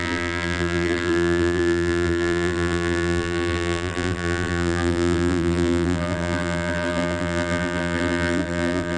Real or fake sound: fake